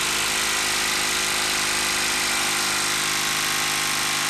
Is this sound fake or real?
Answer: real